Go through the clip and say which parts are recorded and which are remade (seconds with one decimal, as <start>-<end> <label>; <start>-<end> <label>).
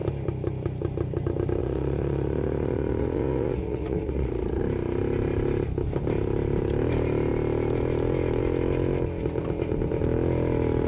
0.0-1.6 recorded; 1.6-4.6 remade; 4.6-10.9 recorded